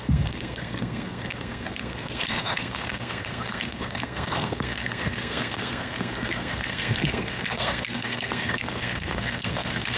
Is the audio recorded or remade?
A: remade